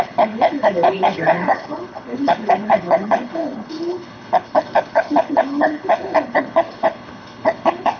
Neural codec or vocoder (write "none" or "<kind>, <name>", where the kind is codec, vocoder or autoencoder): codec, HILCodec